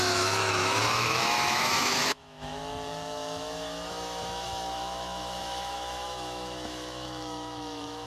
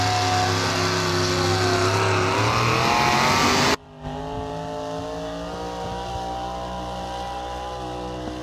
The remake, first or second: first